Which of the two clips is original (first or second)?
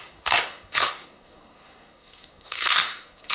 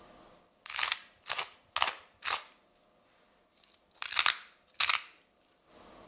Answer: second